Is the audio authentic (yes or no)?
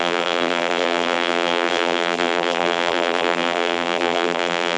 no